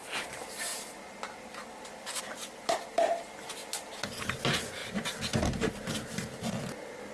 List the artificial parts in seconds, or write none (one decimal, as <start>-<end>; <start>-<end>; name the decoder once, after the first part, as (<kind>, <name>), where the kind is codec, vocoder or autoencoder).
0.0-3.6 (vocoder, BigVGAN v2); 4.2-7.1